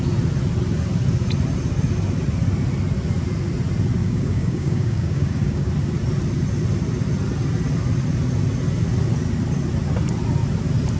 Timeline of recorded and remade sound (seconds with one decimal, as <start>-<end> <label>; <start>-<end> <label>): 0.0-4.0 recorded; 4.0-5.7 remade; 5.7-11.0 recorded